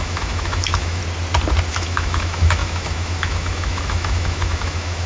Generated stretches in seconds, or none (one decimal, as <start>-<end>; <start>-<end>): 0.0-1.0; 1.7-5.1